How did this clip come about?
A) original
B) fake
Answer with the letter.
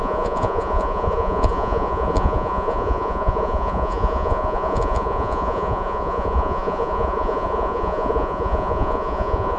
B